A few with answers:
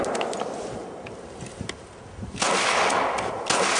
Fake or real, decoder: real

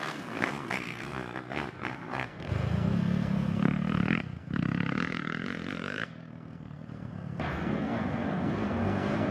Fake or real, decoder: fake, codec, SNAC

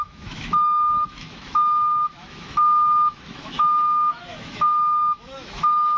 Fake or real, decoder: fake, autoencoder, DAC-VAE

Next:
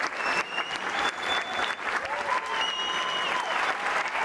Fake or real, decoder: real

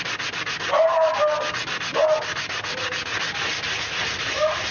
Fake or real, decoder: real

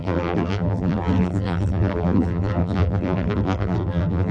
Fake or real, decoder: fake, vocoder, BigVGAN v2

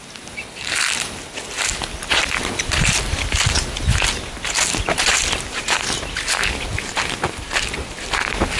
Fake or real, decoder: real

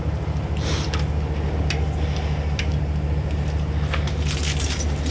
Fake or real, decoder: real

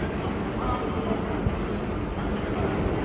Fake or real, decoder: real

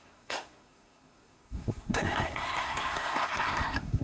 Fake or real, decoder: fake, codec, SNAC